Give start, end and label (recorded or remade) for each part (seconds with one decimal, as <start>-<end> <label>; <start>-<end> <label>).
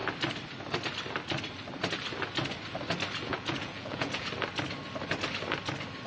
0.0-3.3 recorded; 3.3-4.3 remade; 4.3-6.1 recorded